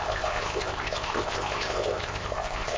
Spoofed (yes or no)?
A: yes